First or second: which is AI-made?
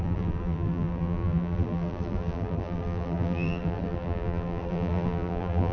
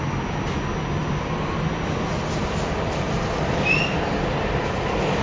first